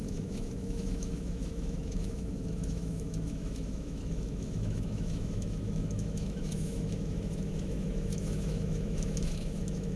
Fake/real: fake